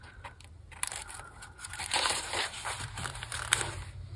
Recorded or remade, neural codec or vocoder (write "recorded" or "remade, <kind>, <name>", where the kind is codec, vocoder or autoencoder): remade, vocoder, BigVGAN v2